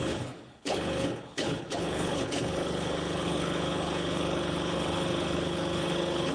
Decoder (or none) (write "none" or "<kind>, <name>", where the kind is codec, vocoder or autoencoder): codec, HILCodec